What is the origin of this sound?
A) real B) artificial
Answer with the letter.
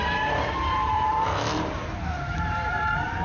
B